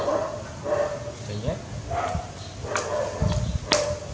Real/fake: real